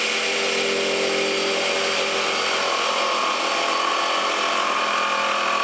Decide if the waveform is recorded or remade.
recorded